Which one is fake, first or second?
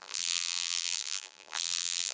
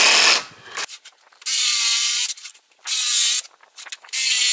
first